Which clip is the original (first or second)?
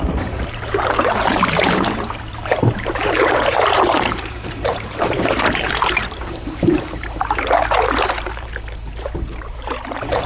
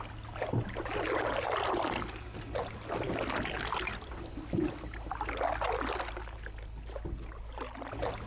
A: second